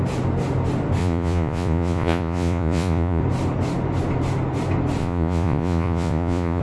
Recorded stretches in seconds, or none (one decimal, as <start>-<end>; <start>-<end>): 0.0-1.0; 3.2-5.0

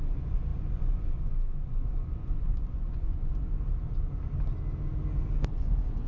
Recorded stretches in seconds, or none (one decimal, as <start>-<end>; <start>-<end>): 3.3-5.5